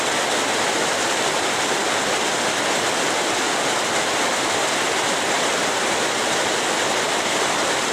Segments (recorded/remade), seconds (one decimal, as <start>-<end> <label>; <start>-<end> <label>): 0.0-7.9 recorded